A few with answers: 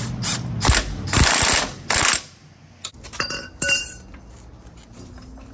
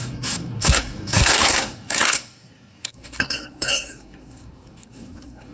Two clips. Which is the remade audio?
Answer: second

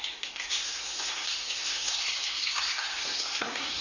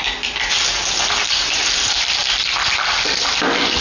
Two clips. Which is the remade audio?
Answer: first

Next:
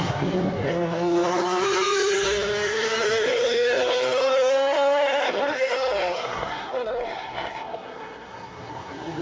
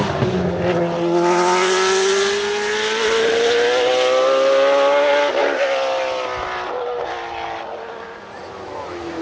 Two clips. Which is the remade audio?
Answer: first